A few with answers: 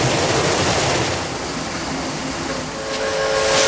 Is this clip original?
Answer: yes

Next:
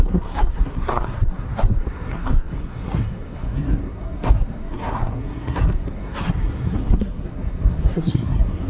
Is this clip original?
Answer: no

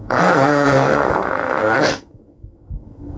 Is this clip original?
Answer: no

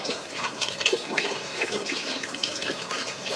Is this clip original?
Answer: no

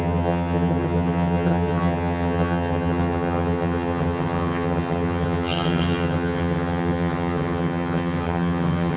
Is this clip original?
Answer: no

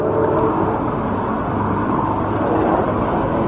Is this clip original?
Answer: yes